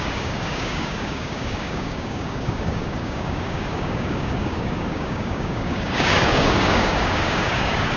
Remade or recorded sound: remade